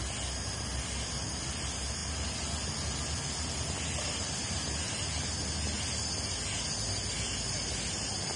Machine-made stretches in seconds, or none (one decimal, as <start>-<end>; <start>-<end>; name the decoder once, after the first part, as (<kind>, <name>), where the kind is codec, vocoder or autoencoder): none

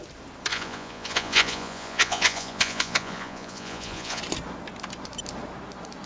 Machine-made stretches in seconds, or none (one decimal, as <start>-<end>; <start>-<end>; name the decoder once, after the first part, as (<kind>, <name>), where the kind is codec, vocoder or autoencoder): 0.5-4.2 (vocoder, Vocos)

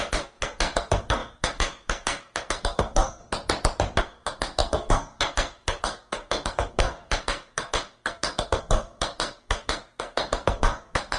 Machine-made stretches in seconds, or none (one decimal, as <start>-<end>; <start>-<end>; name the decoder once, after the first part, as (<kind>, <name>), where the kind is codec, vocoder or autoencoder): 0.0-3.2 (codec, SNAC); 4.0-11.2

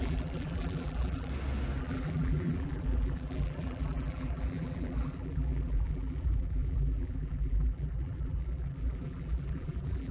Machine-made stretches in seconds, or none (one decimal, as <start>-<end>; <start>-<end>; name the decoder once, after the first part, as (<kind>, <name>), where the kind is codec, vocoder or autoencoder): 0.0-1.3 (vocoder, BigVGAN v2); 1.8-10.1

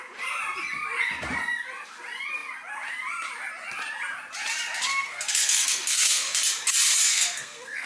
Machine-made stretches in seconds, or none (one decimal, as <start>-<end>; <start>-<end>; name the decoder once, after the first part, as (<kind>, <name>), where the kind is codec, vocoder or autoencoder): 4.9-6.4 (codec, SNAC); 7.1-7.9

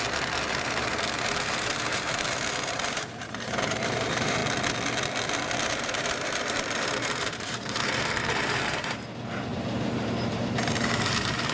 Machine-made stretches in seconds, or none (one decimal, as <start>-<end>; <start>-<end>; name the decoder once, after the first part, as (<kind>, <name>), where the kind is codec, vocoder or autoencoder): 0.0-4.4 (vocoder, BigVGAN v2); 5.7-11.5

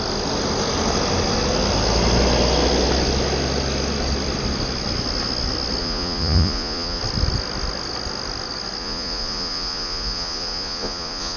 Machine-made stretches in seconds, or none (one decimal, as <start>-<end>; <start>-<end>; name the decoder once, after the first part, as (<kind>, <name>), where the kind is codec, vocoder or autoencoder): 5.8-7.0 (vocoder, Vocos); 8.8-11.4